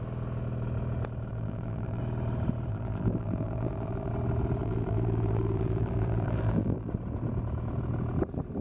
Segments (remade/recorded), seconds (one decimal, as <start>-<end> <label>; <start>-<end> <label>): 0.0-1.3 recorded; 1.3-2.0 remade; 2.0-2.7 recorded; 2.7-4.1 remade; 4.1-4.6 recorded; 4.6-6.9 remade; 6.9-8.6 recorded